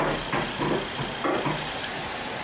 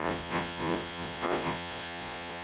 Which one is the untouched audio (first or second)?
first